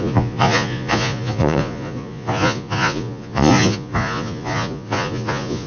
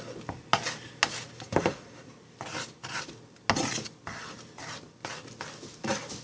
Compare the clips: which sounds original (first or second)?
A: second